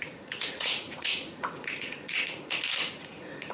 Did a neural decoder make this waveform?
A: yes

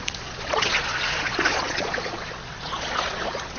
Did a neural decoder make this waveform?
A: yes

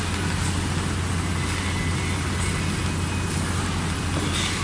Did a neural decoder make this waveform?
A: no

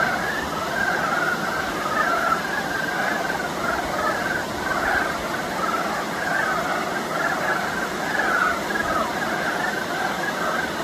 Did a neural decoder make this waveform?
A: no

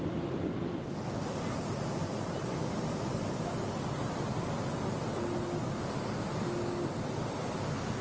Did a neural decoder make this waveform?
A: no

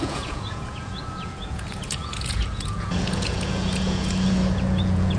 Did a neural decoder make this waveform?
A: yes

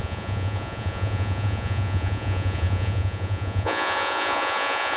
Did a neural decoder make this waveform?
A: yes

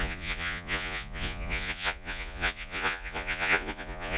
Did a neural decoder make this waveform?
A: yes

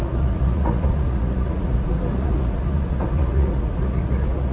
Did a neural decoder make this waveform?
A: yes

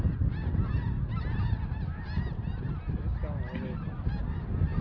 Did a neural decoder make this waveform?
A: no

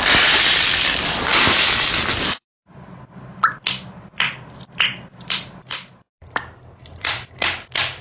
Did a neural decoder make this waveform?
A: no